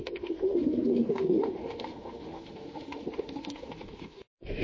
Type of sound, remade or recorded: remade